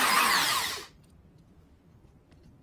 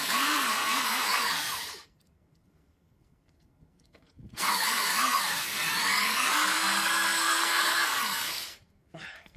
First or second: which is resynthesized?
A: second